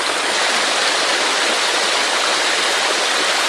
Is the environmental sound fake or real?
real